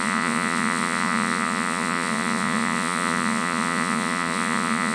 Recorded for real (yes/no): no